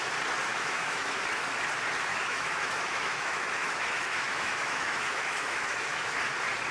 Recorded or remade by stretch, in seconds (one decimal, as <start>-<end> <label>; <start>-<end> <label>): 0.0-0.5 recorded; 0.5-1.2 remade; 1.2-2.1 recorded; 2.1-6.1 remade; 6.1-6.7 recorded